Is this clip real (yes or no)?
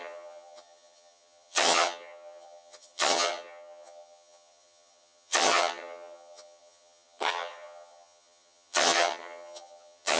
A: no